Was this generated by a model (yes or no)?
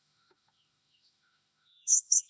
yes